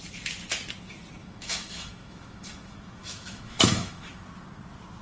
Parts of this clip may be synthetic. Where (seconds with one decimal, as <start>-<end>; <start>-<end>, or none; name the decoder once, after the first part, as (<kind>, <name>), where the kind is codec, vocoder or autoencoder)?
1.2-4.2 (autoencoder, DAC-VAE)